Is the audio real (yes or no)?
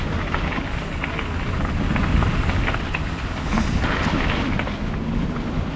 yes